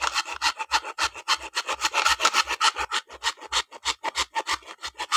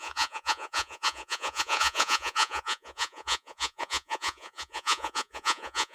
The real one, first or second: first